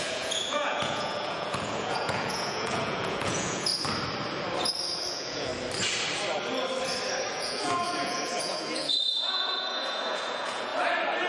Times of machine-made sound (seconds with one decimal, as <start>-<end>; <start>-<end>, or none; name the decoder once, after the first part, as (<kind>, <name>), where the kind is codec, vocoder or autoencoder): 0.0-3.7 (vocoder, Vocos); 5.1-5.5; 7.3-10.7

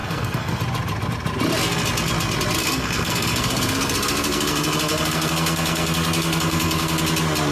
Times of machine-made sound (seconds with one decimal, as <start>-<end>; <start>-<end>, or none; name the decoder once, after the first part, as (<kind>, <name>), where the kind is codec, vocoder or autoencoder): 0.0-0.6 (codec, SNAC); 2.6-7.0

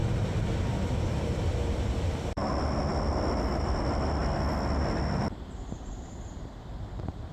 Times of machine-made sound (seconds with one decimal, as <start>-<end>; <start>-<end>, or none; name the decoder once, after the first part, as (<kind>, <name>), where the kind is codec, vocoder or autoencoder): 1.1-4.2 (vocoder, BigVGAN v2); 4.8-7.3

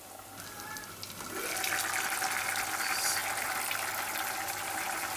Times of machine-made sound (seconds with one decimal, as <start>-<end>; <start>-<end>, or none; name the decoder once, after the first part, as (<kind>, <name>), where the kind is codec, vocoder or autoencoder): none

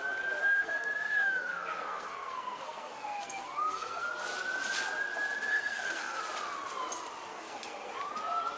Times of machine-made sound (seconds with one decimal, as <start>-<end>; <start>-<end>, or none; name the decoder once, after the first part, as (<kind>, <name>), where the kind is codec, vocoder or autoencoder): 0.4-4.1 (codec, SNAC); 5.5-6.2; 7.3-7.9

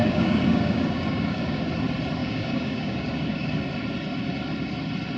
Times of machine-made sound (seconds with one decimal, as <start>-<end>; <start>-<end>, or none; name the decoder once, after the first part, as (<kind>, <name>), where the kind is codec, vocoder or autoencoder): 0.0-1.7 (codec, DAC); 2.2-3.5

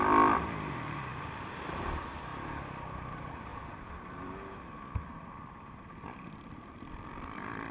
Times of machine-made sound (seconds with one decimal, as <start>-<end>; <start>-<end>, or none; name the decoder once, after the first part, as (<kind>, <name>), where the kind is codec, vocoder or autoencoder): 0.0-1.1 (vocoder, BigVGAN v2); 1.8-2.3; 3.1-3.5; 4.0-7.7